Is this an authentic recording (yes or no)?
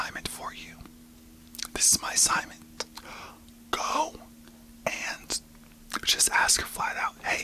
yes